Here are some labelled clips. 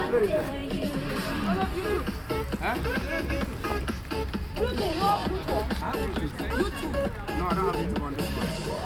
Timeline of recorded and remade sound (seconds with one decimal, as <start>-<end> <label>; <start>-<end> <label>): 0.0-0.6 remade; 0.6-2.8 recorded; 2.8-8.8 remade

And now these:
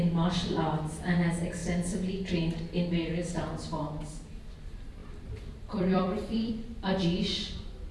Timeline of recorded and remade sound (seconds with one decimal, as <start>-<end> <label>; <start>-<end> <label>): 0.0-5.0 recorded; 5.0-6.5 remade; 6.5-7.9 recorded

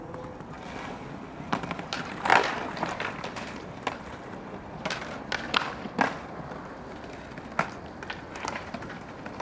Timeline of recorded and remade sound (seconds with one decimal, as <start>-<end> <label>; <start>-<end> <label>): 0.0-2.3 recorded; 2.3-5.0 remade; 5.0-9.4 recorded

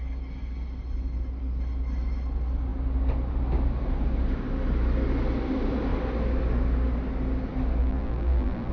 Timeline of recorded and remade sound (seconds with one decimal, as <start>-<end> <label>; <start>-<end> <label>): 0.0-7.8 recorded; 7.8-8.7 remade

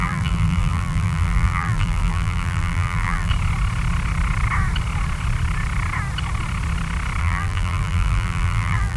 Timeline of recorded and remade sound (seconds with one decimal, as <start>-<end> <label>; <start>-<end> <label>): 0.0-3.3 remade; 3.3-7.2 recorded; 7.2-9.0 remade

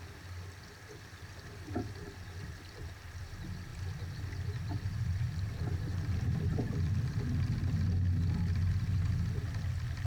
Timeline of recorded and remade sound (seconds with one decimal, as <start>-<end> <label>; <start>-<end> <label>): 0.0-10.1 recorded

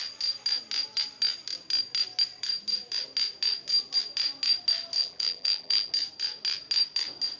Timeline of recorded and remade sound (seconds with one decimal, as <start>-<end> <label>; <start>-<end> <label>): 0.0-5.0 recorded; 5.0-5.9 remade; 5.9-7.4 recorded

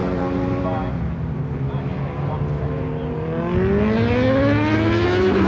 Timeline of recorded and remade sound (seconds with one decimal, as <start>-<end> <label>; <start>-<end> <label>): 0.0-0.6 remade; 0.6-5.5 recorded